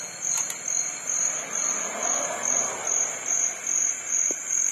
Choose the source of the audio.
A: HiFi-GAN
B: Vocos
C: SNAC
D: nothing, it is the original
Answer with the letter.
D